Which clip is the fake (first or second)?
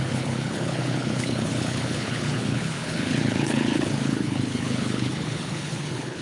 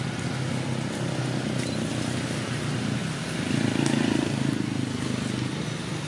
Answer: first